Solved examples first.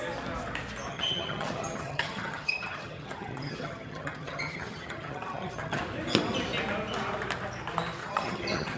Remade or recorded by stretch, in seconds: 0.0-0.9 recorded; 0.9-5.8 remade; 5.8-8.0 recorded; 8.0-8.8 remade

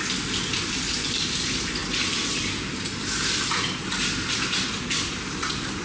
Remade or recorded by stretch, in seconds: 0.0-5.8 recorded

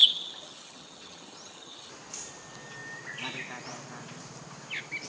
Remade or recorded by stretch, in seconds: 0.0-1.9 remade; 1.9-5.1 recorded

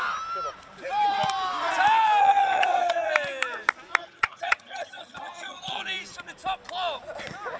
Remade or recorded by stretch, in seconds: 0.0-2.2 recorded; 2.2-3.1 remade; 3.1-4.0 recorded; 4.0-5.8 remade; 5.8-7.6 recorded

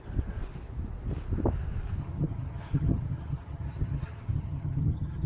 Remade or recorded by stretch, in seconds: 0.0-2.0 recorded; 2.0-5.3 remade

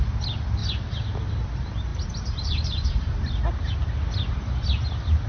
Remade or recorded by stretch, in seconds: 0.0-5.3 recorded

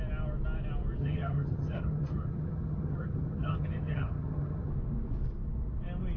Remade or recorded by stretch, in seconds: 0.0-1.0 recorded; 1.0-4.7 remade; 4.7-6.2 recorded

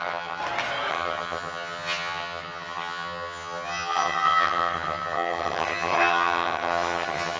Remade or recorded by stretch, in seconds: 0.0-0.4 remade; 0.4-0.9 recorded; 0.9-7.4 remade